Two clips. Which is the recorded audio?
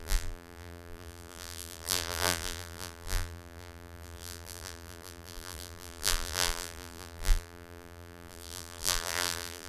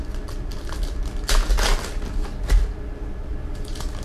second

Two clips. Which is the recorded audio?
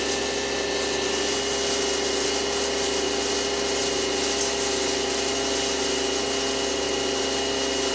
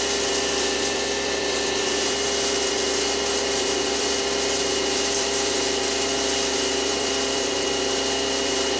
first